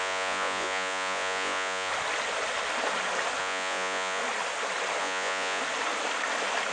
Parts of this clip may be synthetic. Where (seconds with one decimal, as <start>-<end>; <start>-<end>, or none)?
0.0-1.9; 3.4-4.2; 5.0-5.6